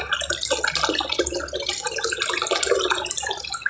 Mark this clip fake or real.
real